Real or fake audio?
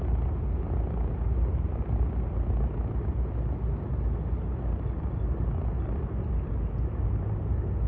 real